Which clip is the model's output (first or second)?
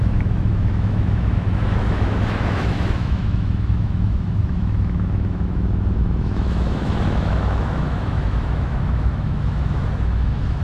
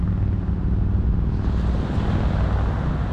first